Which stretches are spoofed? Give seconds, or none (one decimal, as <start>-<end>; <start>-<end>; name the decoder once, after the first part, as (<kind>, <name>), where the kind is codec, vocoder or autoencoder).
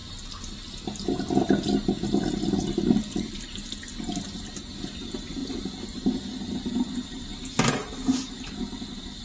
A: none